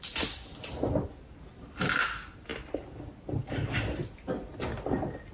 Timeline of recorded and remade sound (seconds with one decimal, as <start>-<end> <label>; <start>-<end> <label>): 0.0-5.3 recorded